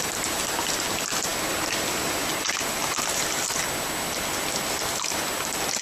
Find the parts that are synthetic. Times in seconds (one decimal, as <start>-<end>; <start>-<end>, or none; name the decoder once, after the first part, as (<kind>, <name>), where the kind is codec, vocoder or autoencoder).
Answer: none